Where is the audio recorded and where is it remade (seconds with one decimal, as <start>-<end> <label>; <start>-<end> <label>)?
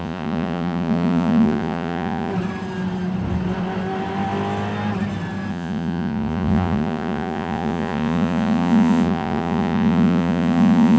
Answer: 0.0-2.3 remade; 2.3-5.5 recorded; 5.5-11.0 remade